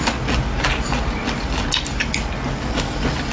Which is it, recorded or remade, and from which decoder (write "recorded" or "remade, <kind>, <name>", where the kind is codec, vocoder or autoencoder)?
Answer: recorded